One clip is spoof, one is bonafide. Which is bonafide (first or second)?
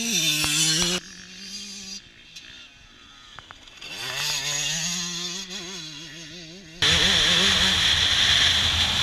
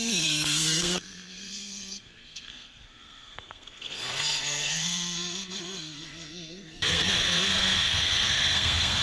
first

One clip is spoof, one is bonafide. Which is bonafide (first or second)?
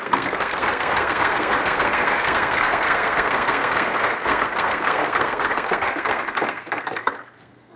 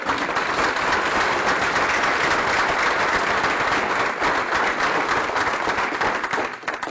second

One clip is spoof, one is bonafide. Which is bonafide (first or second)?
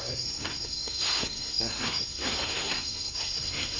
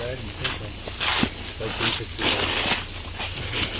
second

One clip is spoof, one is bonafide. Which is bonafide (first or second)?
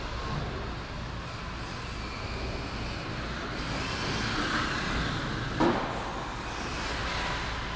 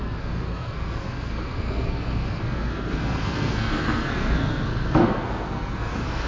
first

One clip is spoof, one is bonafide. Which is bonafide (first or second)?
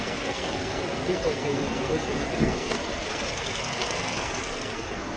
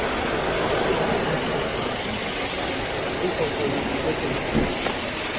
second